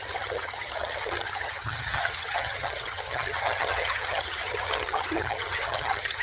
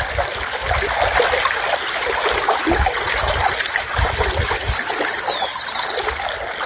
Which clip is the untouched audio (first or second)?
second